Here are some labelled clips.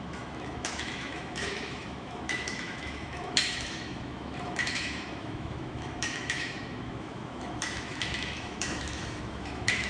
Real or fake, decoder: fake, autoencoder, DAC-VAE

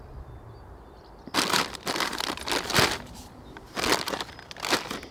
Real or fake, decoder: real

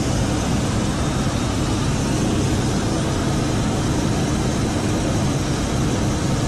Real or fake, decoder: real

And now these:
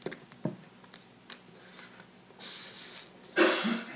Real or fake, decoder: real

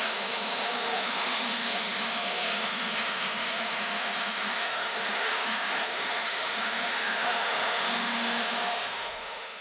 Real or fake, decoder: fake, autoencoder, DAC-VAE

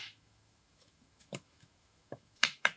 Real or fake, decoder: fake, autoencoder, DAC-VAE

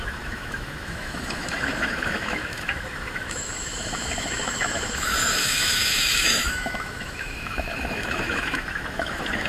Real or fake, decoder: fake, autoencoder, DAC-VAE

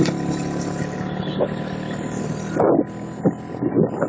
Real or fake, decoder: real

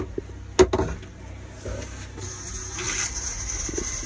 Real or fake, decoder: real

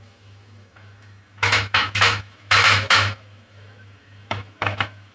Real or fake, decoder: fake, autoencoder, DAC-VAE